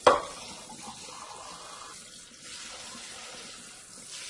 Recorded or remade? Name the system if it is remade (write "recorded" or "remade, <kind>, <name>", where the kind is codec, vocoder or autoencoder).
remade, vocoder, BigVGAN v2